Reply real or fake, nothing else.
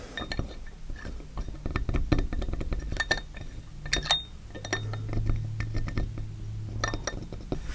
real